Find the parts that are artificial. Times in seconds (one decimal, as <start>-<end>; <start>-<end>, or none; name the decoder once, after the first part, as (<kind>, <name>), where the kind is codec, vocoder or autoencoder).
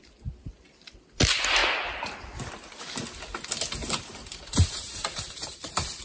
4.2-6.0 (vocoder, BigVGAN v2)